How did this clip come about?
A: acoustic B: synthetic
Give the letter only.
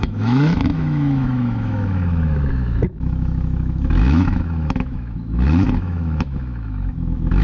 B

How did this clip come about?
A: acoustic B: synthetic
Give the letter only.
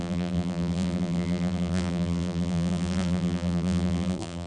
B